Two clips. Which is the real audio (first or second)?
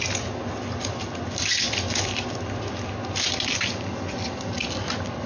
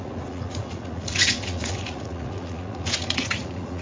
first